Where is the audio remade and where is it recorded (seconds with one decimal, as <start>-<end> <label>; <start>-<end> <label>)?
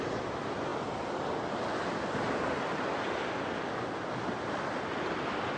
0.0-5.6 recorded